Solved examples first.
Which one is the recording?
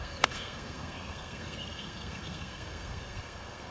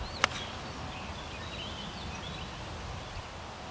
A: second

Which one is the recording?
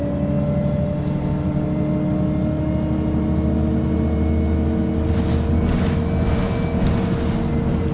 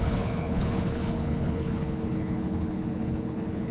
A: first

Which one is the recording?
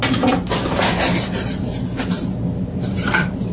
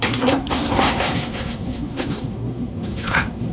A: first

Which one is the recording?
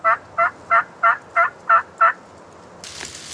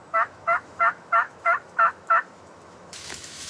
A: first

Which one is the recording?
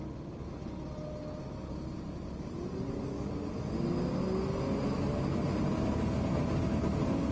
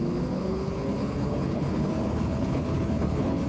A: first